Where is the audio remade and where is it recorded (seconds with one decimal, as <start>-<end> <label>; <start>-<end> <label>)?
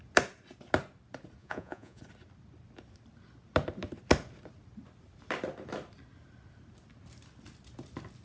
0.0-1.4 recorded; 1.4-2.0 remade; 2.0-8.2 recorded